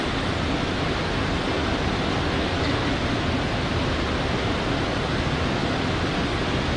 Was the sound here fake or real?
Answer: real